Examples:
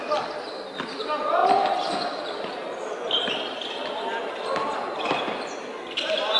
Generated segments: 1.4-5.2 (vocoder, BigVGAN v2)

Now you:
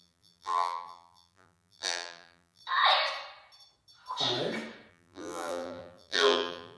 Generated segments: 0.0-2.6 (vocoder, BigVGAN v2); 4.9-6.8

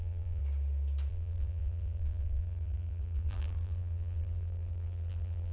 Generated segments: 0.0-0.4 (vocoder, BigVGAN v2); 1.1-5.5

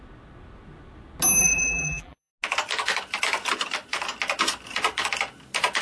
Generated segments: 1.4-2.3 (vocoder, BigVGAN v2)

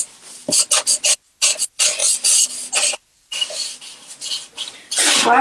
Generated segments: 2.0-4.8 (vocoder, BigVGAN v2)